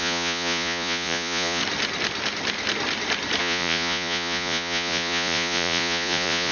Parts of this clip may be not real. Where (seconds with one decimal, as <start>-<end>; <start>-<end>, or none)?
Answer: 0.0-1.6; 3.4-6.5